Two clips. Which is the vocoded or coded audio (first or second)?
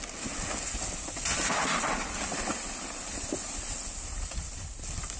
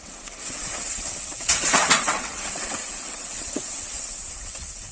second